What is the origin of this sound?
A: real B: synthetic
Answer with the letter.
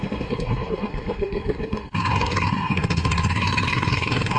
B